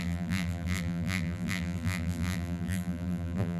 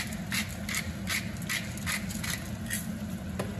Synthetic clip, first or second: first